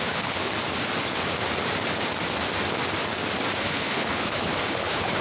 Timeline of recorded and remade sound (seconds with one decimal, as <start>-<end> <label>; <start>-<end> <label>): 0.0-0.5 remade; 0.5-3.6 recorded; 3.6-5.2 remade